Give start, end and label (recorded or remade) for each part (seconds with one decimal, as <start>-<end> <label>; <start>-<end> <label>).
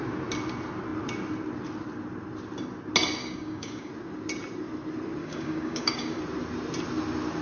0.0-3.2 recorded; 3.2-3.9 remade; 3.9-5.2 recorded; 5.2-6.2 remade; 6.2-7.4 recorded